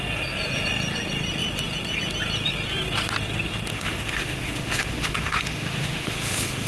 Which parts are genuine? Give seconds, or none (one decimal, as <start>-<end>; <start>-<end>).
0.0-3.7